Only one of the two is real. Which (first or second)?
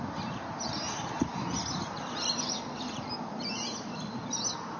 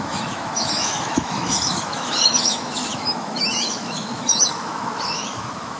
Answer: first